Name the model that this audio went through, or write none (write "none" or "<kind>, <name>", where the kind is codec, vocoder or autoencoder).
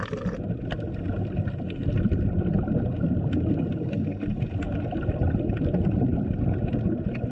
none